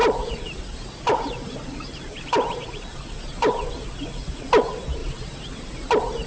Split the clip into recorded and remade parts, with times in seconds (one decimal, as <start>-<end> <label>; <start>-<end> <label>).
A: 0.0-3.7 remade; 3.7-5.0 recorded; 5.0-6.3 remade